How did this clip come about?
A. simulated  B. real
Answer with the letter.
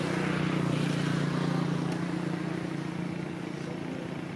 B